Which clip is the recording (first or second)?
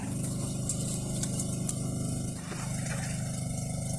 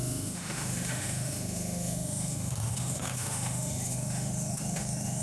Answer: first